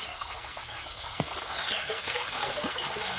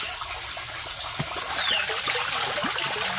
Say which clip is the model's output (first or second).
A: first